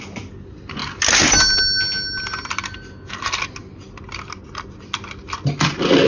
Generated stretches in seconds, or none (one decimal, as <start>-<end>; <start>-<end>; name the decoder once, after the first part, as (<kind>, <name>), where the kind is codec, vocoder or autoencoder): none